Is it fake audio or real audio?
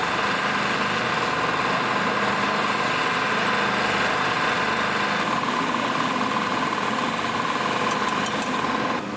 real